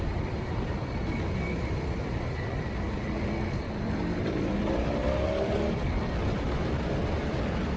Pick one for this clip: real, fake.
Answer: fake